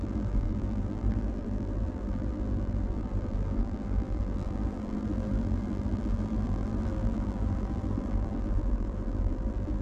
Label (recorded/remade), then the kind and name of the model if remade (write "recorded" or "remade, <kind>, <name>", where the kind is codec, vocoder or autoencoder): remade, vocoder, BigVGAN v2